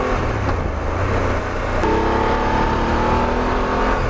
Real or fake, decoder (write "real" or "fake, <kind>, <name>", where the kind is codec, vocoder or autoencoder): real